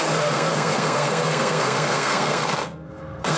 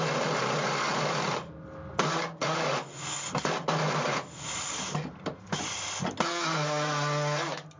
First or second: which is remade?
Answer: first